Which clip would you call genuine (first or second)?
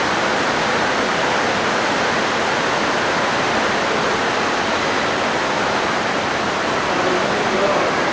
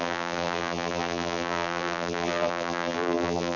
first